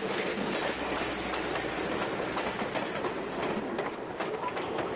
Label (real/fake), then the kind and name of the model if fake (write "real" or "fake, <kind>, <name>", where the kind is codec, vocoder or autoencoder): real